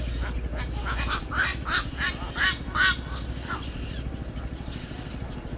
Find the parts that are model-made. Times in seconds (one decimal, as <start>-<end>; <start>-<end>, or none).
none